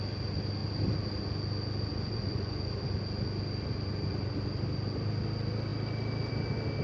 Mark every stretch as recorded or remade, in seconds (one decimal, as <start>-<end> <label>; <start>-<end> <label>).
0.0-1.9 recorded; 1.9-2.7 remade; 2.7-6.8 recorded